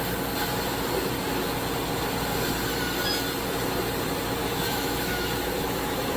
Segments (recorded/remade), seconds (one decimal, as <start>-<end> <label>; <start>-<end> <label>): 0.0-4.4 recorded; 4.4-6.2 remade